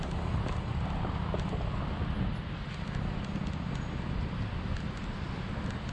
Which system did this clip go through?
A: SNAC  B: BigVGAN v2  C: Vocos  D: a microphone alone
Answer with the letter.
D